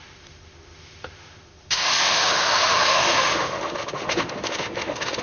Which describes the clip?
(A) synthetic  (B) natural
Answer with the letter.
A